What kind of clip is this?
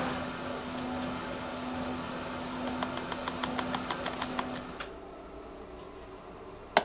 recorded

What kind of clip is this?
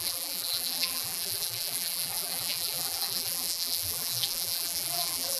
remade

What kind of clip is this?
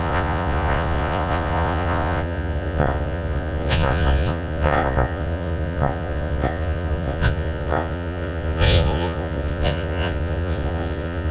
remade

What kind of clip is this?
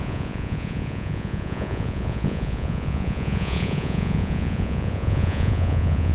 remade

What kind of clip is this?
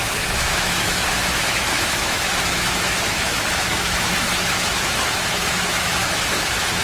remade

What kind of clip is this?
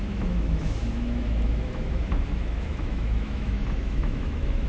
remade